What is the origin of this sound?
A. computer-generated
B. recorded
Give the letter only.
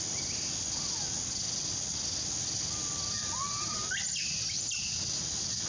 B